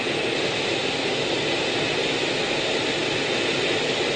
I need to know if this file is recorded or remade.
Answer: recorded